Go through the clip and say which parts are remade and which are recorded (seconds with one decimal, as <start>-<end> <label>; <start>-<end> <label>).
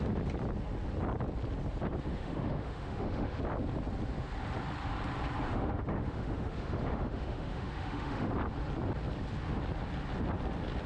0.0-2.1 recorded; 2.1-3.4 remade; 3.4-5.5 recorded; 5.5-8.3 remade; 8.3-10.9 recorded